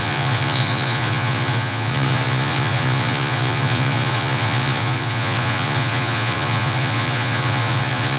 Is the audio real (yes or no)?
no